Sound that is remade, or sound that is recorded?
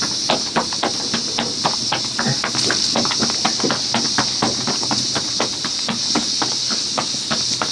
recorded